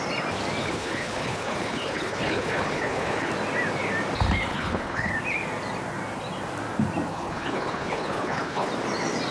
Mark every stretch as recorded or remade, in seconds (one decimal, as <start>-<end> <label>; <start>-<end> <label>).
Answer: 0.0-0.6 recorded; 0.6-3.3 remade; 3.3-4.5 recorded; 4.5-5.1 remade; 5.1-7.1 recorded; 7.1-8.7 remade; 8.7-9.3 recorded